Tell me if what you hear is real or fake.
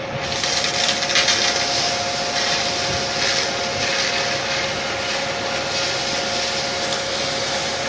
real